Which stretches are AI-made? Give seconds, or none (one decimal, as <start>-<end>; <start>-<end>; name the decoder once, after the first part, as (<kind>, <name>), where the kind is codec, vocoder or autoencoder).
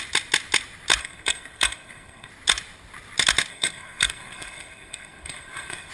1.0-2.3 (codec, SNAC); 3.5-5.9